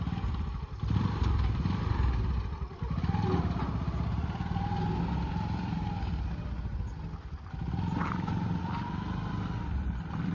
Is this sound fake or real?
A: fake